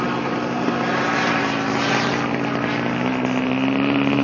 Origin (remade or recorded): recorded